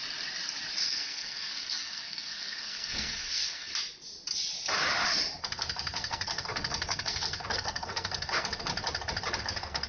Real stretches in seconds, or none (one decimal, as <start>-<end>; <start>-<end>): 0.0-0.8; 3.7-5.4; 8.7-9.4